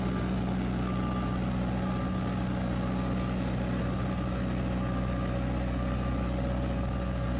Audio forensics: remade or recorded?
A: recorded